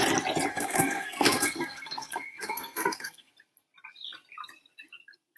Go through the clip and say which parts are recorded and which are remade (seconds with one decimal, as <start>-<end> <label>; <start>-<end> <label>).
0.0-0.5 recorded; 0.5-3.3 remade; 3.3-5.4 recorded